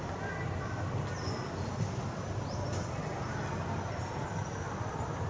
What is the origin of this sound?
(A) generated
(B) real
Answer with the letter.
B